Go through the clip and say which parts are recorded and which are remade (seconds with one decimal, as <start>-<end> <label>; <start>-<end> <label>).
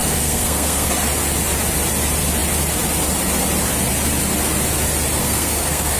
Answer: 0.0-0.9 remade; 0.9-5.2 recorded; 5.2-6.0 remade